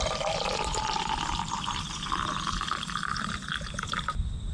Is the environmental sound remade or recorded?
recorded